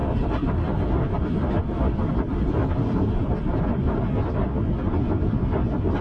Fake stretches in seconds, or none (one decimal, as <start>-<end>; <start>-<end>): 0.0-3.6